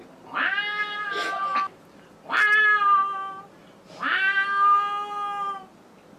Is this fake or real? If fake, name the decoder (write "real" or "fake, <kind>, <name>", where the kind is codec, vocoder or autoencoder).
real